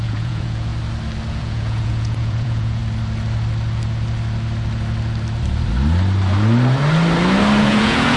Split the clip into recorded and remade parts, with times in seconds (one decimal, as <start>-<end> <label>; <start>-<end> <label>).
0.0-0.7 remade; 0.7-1.3 recorded; 1.3-2.8 remade; 2.8-7.6 recorded; 7.6-8.2 remade